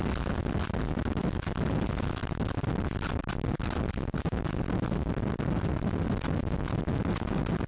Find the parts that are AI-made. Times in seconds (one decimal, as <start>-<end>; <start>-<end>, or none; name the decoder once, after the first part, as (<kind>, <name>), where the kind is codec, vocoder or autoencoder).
none